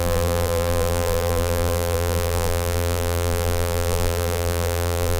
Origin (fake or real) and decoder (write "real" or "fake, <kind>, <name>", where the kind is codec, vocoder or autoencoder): fake, vocoder, BigVGAN v2